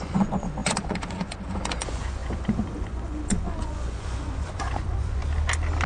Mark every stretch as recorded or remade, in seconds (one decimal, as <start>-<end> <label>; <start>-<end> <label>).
0.0-5.2 remade; 5.2-5.9 recorded